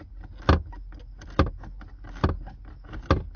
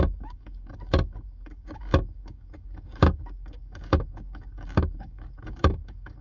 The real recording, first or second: first